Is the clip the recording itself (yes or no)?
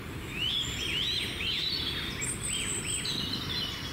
yes